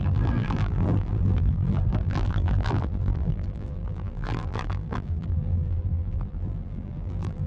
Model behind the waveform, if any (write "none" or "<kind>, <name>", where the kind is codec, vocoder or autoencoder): vocoder, BigVGAN v2